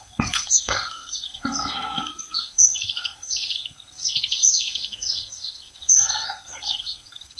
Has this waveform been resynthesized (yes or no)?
yes